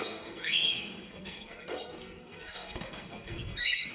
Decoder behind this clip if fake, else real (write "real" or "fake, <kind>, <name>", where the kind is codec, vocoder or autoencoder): fake, codec, SNAC